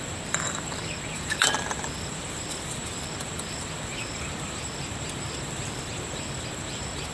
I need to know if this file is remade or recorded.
remade